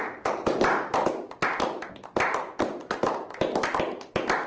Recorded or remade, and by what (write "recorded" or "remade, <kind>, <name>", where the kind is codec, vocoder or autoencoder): recorded